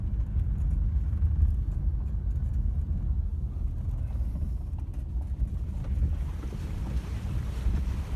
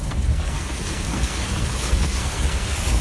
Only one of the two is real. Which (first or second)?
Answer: first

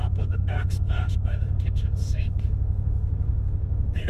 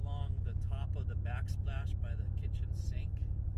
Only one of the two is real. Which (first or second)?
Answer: second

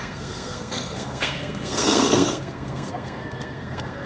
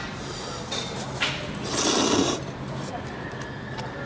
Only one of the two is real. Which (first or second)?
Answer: second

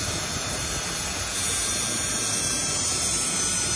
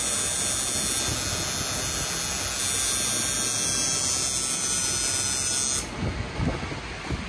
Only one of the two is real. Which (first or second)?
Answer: second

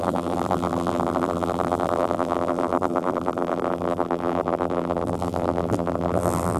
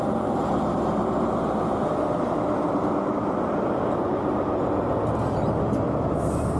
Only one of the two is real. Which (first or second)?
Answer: second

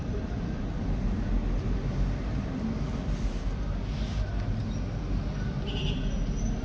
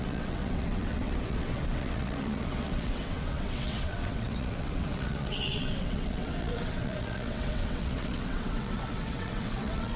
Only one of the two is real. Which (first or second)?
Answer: first